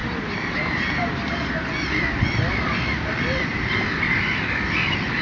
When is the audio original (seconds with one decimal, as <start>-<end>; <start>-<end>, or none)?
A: 1.5-5.2